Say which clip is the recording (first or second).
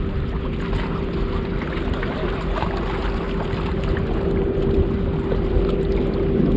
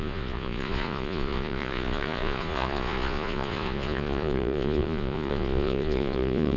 first